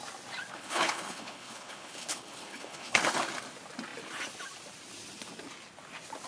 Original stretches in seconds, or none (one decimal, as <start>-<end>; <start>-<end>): 0.0-0.5; 3.0-6.3

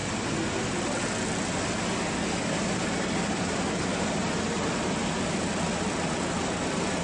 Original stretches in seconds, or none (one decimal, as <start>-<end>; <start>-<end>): 0.0-7.0

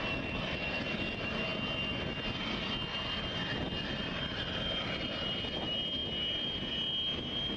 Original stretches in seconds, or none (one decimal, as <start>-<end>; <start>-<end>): 0.0-7.6

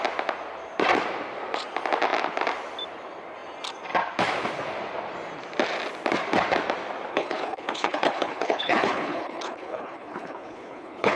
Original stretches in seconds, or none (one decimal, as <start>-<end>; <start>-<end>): 0.0-7.1